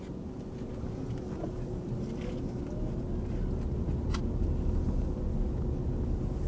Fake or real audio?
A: real